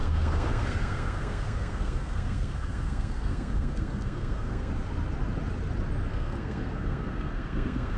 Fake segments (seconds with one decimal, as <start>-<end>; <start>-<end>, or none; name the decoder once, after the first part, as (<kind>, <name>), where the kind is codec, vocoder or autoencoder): 0.0-4.7 (codec, SNAC); 6.1-8.0